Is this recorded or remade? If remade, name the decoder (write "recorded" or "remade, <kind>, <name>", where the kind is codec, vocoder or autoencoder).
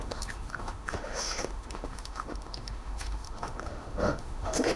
remade, autoencoder, DAC-VAE